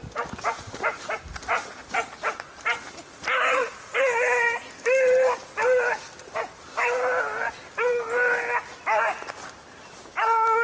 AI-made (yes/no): no